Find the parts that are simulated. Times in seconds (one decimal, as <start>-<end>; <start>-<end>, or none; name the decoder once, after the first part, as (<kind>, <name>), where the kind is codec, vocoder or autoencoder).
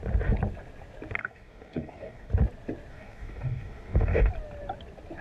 1.2-2.3 (codec, DAC); 2.9-4.3